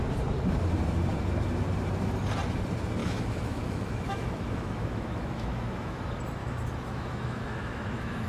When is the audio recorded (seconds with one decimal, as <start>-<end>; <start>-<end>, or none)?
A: 0.0-3.0; 6.0-6.4